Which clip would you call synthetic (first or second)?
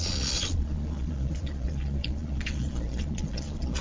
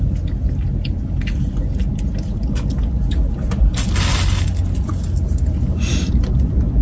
first